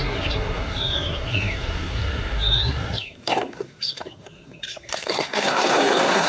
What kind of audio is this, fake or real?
fake